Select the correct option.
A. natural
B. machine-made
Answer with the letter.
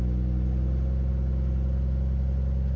A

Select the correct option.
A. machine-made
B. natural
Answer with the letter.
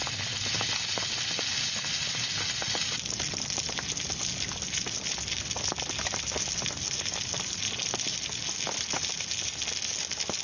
B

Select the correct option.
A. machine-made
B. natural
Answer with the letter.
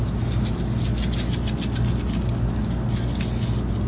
B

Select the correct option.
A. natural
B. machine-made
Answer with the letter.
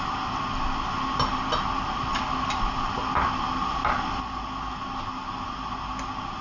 A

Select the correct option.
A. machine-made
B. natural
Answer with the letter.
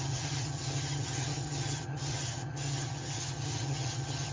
A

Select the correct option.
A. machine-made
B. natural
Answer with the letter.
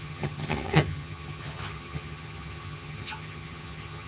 A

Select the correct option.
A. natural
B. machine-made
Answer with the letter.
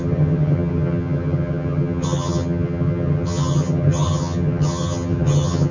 B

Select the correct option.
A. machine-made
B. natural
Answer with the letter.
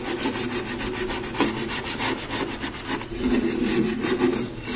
B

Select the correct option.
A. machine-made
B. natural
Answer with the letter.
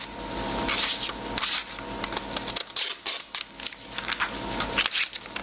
B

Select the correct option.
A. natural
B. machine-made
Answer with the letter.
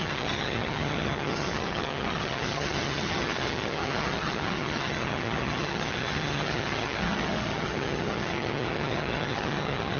B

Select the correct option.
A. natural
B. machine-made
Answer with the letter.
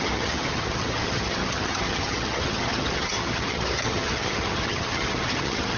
B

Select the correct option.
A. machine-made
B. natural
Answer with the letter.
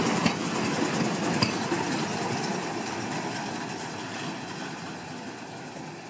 B